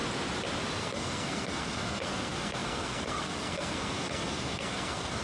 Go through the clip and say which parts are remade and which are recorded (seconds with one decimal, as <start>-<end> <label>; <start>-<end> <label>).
0.0-0.8 recorded; 0.8-5.2 remade